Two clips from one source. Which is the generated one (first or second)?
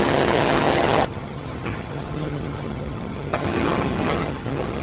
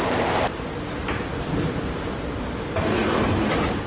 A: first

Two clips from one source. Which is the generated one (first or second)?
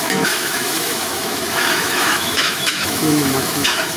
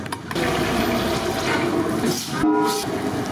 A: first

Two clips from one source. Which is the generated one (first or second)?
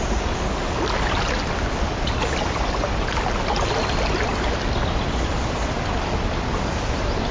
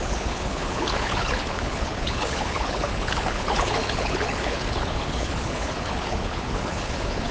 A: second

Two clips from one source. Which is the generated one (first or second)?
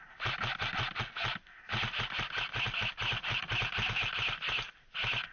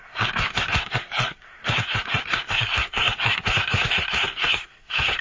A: second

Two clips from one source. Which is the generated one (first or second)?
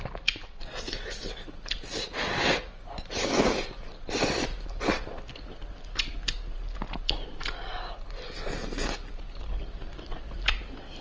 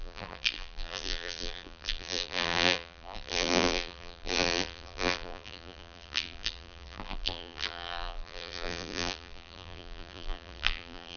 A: second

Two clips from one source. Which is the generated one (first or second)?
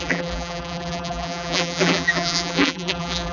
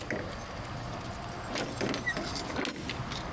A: first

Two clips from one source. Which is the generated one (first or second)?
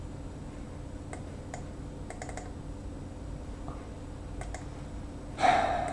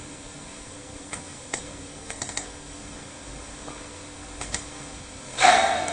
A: second